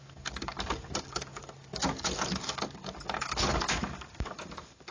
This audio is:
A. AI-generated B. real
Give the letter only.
A